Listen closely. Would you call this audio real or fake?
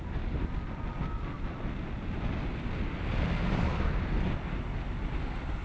real